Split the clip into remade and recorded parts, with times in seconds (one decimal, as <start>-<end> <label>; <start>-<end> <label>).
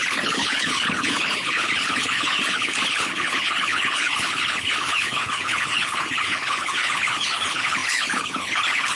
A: 0.0-9.0 remade